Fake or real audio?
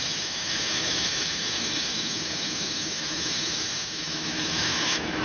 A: fake